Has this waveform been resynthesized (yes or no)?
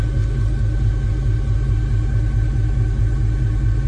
no